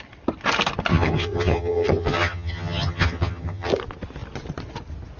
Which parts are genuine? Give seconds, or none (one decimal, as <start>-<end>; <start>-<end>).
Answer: 0.0-0.9; 3.7-5.2